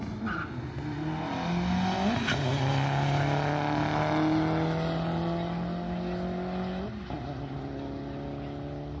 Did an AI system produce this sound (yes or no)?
no